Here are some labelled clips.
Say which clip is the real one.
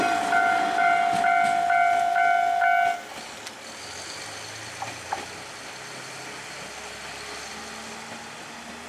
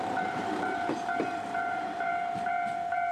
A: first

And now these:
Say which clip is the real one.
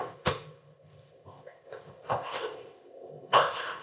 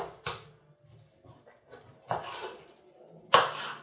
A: second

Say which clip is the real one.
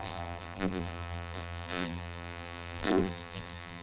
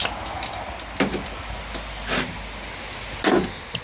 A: second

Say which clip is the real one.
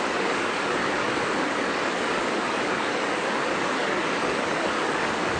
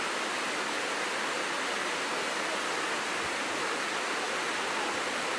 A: second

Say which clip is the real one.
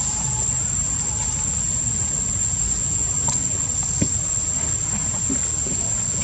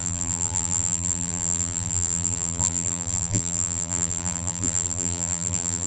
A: first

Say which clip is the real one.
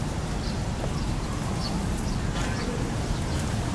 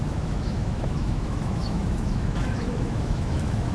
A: first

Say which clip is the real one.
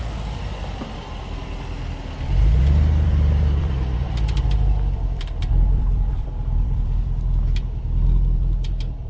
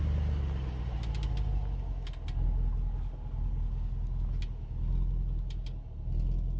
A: second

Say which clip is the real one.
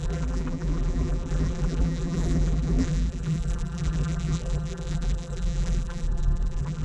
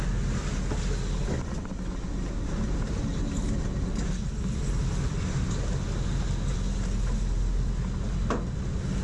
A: second